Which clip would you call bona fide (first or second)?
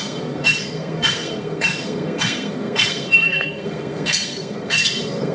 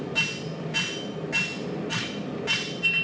second